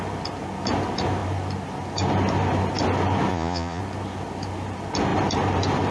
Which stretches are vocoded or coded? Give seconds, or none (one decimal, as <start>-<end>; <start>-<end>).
3.3-3.8